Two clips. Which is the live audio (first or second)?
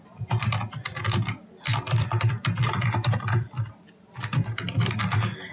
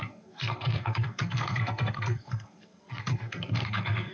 first